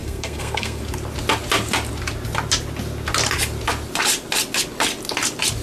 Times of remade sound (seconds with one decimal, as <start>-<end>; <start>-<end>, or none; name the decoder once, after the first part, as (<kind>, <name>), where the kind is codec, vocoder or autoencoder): 0.0-0.8 (codec, SNAC)